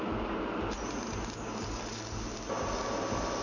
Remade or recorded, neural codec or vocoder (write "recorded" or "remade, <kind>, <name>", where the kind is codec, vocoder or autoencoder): recorded